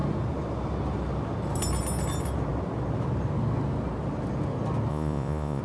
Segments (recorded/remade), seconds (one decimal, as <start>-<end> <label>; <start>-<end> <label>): 0.0-4.9 recorded; 4.9-5.6 remade